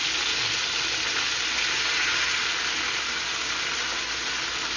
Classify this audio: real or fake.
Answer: real